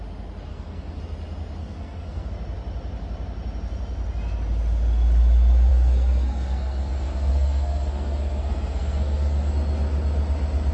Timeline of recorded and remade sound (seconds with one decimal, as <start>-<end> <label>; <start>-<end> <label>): 0.0-0.5 recorded; 0.5-1.0 remade; 1.0-1.6 recorded; 1.6-2.3 remade; 2.3-5.7 recorded; 5.7-9.5 remade; 9.5-10.7 recorded